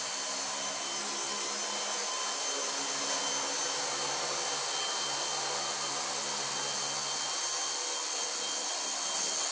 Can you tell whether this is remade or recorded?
recorded